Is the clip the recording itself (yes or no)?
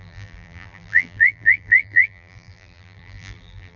no